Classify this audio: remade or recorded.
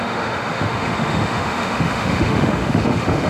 remade